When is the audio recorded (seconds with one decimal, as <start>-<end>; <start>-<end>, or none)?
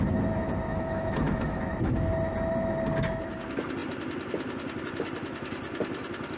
0.0-0.7; 1.6-6.4